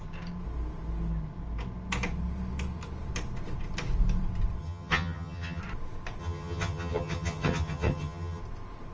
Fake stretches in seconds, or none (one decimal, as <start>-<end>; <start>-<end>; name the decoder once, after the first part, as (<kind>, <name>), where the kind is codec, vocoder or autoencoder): 4.6-5.6 (vocoder, HiFi-GAN); 6.2-8.4